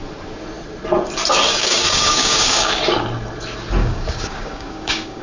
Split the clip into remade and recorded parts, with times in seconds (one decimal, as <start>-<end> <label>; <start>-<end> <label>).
0.0-1.5 recorded; 1.5-2.8 remade; 2.8-3.8 recorded; 3.8-5.2 remade